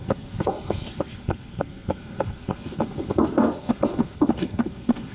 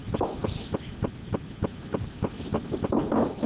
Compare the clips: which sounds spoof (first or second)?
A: first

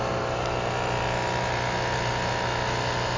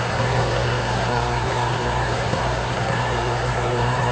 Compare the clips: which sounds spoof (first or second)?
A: second